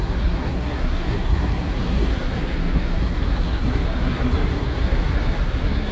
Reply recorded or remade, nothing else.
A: remade